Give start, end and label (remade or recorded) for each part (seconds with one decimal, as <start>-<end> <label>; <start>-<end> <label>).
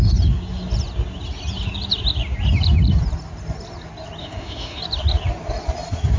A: 0.0-4.2 recorded; 4.2-4.8 remade; 4.8-6.2 recorded